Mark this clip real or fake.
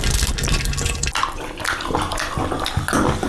real